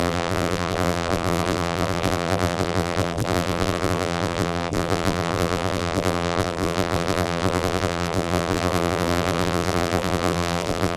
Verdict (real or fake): fake